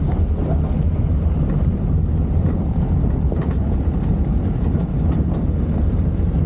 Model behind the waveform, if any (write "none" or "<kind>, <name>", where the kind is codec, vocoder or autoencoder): none